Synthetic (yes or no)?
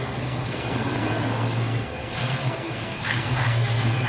yes